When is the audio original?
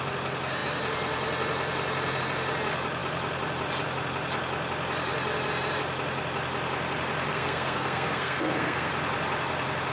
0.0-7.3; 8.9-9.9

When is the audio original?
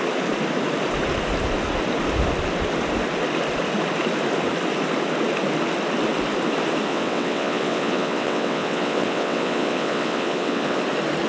0.0-6.9; 10.8-11.3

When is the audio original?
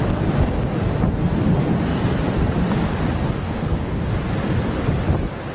0.0-3.4; 4.2-5.5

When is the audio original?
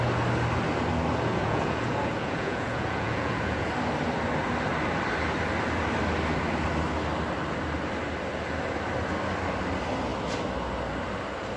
0.0-1.3; 3.7-11.6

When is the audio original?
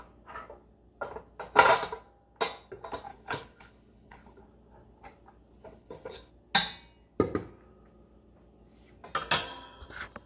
0.0-3.1; 4.4-5.6; 6.3-10.3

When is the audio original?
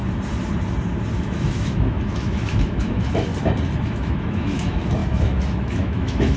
0.0-1.2; 3.3-3.8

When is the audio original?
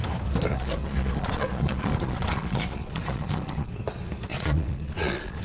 0.0-0.5; 3.7-4.3